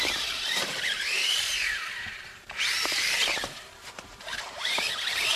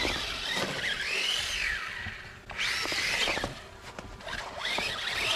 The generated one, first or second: first